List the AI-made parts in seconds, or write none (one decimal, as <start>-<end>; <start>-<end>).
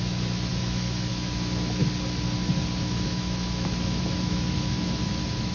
0.0-1.8; 2.8-5.5